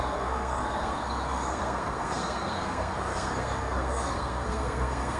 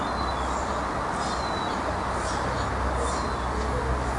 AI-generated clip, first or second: first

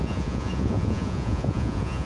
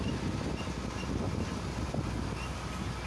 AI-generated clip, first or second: first